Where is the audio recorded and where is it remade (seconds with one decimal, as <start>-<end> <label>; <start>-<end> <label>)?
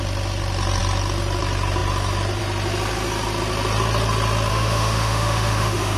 0.0-4.5 recorded; 4.5-6.0 remade